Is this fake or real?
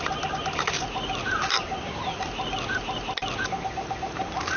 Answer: real